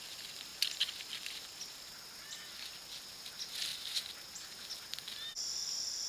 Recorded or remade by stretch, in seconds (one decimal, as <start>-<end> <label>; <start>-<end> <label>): 0.0-6.1 recorded